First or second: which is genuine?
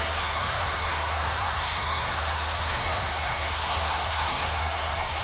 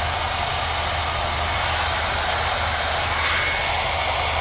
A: second